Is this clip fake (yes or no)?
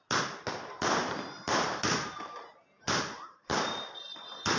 no